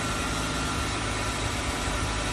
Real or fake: real